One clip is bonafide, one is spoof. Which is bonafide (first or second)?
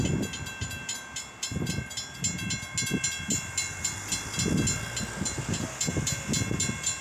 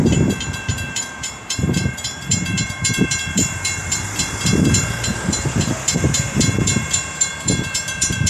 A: first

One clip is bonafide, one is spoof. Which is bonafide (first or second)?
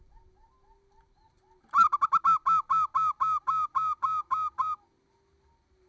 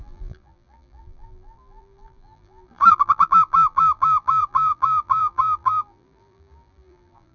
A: first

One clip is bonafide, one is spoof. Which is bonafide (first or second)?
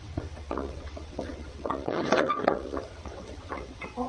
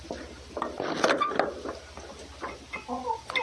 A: second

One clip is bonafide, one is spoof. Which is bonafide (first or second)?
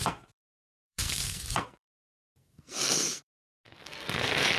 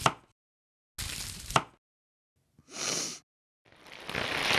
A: second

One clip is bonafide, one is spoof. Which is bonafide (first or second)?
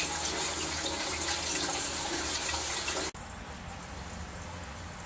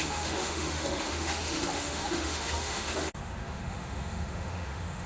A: first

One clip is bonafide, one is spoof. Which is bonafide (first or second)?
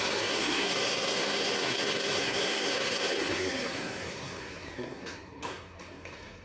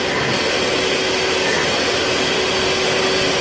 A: second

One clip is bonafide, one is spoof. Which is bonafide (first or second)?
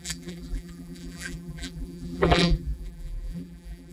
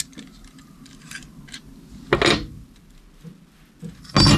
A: second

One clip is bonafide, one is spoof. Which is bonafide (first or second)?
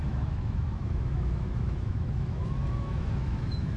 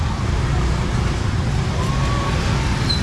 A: second